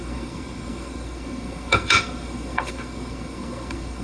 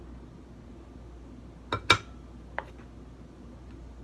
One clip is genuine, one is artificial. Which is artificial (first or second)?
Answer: first